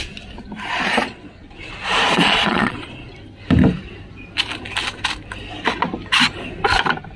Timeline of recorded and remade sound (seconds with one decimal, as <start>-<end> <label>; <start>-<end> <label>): 0.0-0.7 recorded; 0.7-3.1 remade; 3.1-7.2 recorded